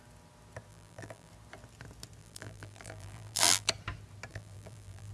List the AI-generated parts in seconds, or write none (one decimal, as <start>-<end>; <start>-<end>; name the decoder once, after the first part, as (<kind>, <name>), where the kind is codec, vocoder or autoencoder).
0.7-1.3 (vocoder, BigVGAN v2); 2.2-3.7; 4.3-5.1